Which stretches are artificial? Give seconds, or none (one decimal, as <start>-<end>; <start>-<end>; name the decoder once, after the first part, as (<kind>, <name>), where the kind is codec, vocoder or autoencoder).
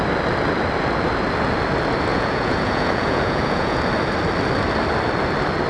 2.1-3.8 (vocoder, Vocos)